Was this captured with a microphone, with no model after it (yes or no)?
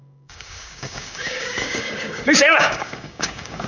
no